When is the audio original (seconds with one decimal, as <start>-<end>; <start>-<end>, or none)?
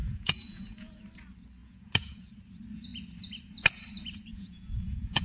1.0-1.6; 2.3-4.3